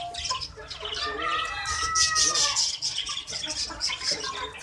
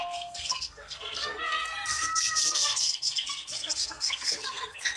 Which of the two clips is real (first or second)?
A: first